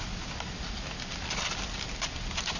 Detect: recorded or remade recorded